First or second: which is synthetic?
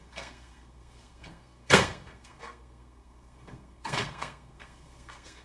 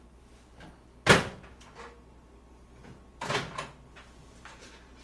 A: first